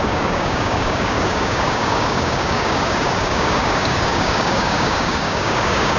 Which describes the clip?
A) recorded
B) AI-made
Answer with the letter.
B